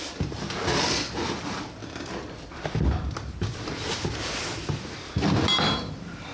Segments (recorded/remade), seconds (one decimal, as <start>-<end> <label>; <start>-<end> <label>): 0.0-6.3 recorded